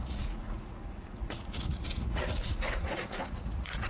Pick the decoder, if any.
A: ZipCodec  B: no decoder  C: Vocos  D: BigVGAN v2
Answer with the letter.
C